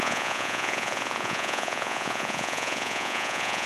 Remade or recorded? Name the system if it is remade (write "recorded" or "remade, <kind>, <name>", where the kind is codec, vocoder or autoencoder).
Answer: remade, vocoder, Vocos